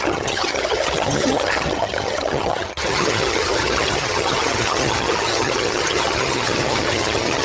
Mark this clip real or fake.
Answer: fake